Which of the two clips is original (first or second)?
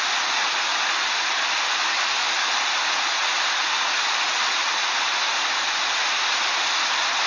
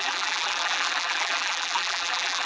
first